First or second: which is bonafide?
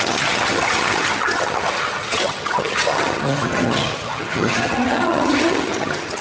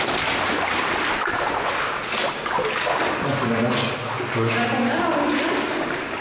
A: second